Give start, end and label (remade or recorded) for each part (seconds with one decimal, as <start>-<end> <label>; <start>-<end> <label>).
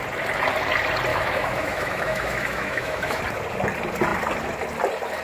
0.0-1.1 recorded; 1.1-3.2 remade; 3.2-5.2 recorded